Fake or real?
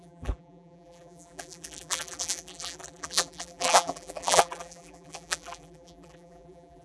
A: fake